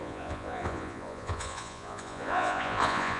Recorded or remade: remade